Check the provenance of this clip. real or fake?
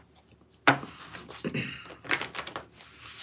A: real